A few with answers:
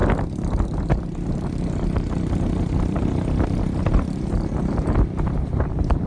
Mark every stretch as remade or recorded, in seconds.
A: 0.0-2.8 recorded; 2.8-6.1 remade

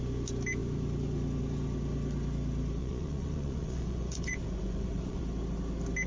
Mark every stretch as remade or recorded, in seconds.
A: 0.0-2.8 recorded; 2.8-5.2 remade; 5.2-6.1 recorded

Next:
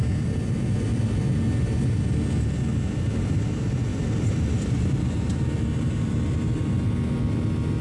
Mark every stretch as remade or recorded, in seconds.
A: 0.0-3.9 recorded; 3.9-6.1 remade; 6.1-7.8 recorded

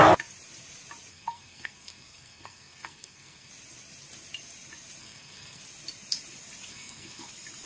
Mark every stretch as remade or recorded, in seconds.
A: 0.0-1.1 recorded; 1.1-3.5 remade; 3.5-5.0 recorded; 5.0-5.6 remade; 5.6-6.7 recorded; 6.7-7.3 remade; 7.3-7.7 recorded

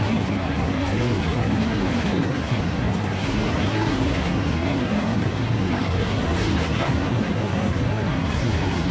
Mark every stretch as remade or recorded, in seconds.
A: 0.0-8.9 remade

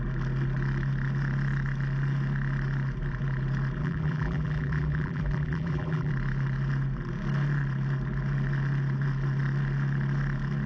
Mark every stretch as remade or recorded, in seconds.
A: 0.0-3.8 recorded; 3.8-6.1 remade; 6.1-10.7 recorded

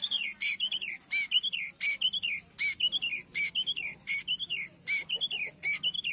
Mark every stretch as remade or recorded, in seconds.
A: 0.0-1.0 remade; 1.0-6.1 recorded